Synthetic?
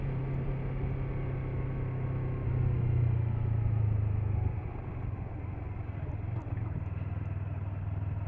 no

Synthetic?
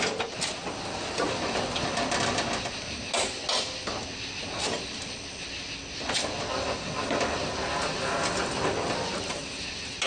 no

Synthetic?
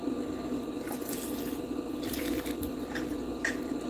yes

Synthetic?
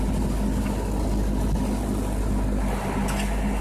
no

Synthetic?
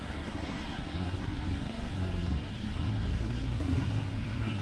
yes